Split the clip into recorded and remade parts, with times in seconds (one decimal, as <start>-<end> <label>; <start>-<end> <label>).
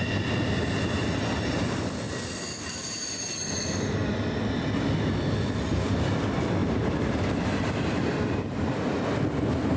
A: 0.0-1.0 recorded; 1.0-3.0 remade; 3.0-6.6 recorded; 6.6-9.1 remade; 9.1-9.8 recorded